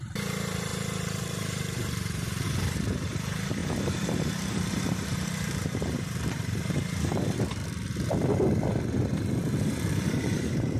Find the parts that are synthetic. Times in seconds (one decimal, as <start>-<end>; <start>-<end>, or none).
0.0-7.6; 8.9-10.8